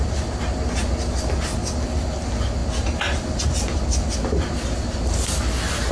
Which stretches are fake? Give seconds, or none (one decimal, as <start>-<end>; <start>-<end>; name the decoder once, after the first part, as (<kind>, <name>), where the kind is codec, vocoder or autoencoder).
none